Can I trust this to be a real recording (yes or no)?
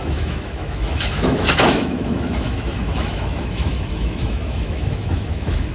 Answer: no